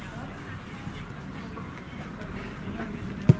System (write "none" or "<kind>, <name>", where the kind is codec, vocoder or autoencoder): none